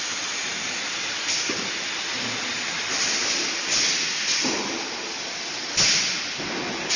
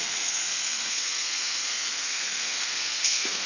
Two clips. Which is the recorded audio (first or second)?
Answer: first